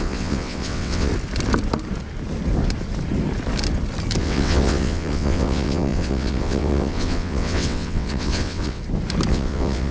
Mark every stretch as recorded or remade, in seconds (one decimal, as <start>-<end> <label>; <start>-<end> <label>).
0.0-1.1 remade; 1.1-4.2 recorded; 4.2-8.8 remade; 8.8-9.3 recorded; 9.3-9.9 remade